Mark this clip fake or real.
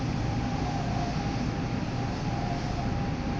real